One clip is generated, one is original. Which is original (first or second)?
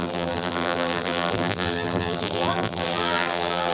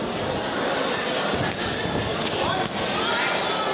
second